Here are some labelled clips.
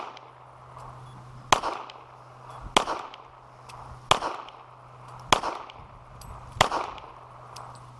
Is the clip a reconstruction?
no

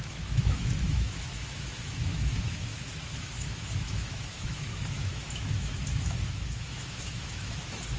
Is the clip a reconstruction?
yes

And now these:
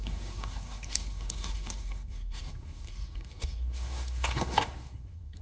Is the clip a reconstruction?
yes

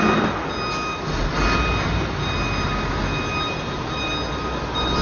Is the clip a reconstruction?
no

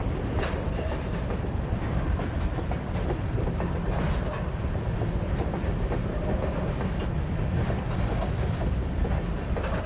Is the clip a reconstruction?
no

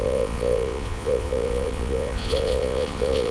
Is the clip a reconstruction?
yes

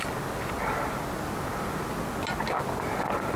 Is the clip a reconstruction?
no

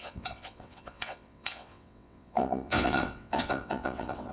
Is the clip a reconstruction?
yes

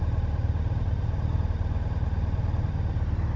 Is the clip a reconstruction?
no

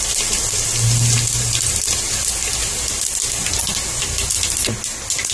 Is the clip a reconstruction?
no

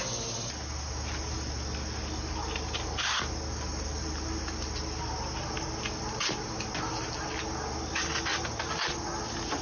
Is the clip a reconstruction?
no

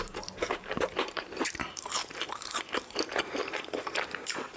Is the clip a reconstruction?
yes